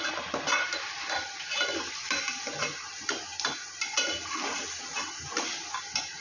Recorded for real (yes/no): yes